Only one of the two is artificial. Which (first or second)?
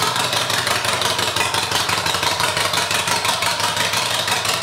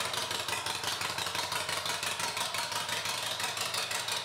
first